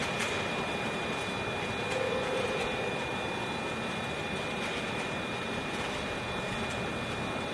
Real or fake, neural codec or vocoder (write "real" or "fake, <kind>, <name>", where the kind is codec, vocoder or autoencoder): real